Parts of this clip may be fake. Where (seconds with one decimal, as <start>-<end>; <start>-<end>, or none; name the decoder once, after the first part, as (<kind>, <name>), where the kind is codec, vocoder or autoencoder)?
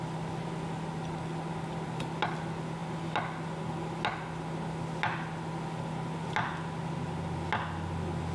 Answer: none